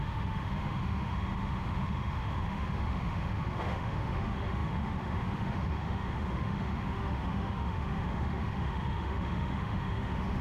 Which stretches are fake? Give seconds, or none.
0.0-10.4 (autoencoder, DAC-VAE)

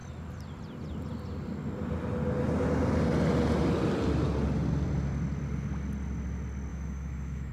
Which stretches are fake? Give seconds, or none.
6.7-7.5 (autoencoder, DAC-VAE)

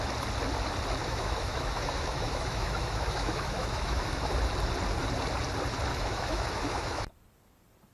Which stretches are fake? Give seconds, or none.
1.0-4.3 (autoencoder, DAC-VAE); 5.9-7.0

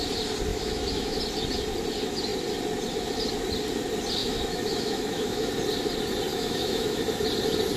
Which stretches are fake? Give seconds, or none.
0.5-1.2 (autoencoder, DAC-VAE); 4.2-5.5; 6.3-7.0

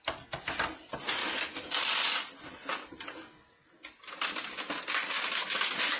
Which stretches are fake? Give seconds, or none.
1.2-1.7 (autoencoder, DAC-VAE)

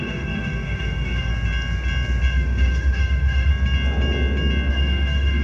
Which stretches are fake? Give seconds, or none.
0.0-1.3 (autoencoder, DAC-VAE); 2.3-3.5; 4.7-5.4